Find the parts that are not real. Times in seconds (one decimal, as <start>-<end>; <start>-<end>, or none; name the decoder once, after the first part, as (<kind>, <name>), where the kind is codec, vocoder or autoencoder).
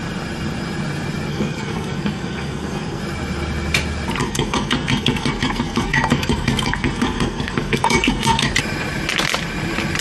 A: 1.3-3.0 (codec, SNAC); 4.2-8.5